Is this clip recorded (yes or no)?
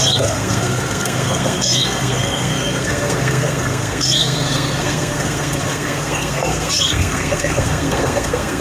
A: no